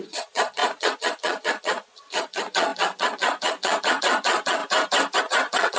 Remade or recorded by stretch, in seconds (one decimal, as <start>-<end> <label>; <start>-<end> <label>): 0.0-4.6 remade; 4.6-5.2 recorded; 5.2-5.8 remade